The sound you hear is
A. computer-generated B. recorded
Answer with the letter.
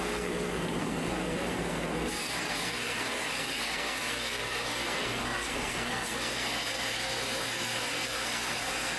A